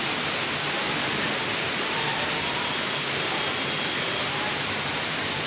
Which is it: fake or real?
real